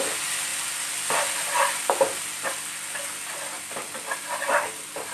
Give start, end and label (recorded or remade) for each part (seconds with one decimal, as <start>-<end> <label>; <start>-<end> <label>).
0.0-5.1 recorded